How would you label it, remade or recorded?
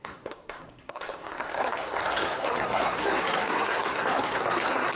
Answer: remade